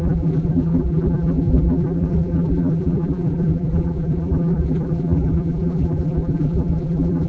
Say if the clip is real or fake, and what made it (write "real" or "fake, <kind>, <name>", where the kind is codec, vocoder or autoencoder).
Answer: fake, vocoder, BigVGAN v2